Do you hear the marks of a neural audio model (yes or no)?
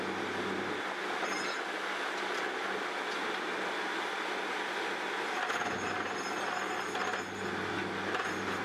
no